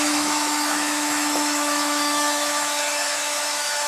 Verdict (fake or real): fake